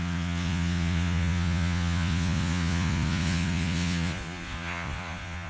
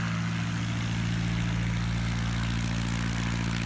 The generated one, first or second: first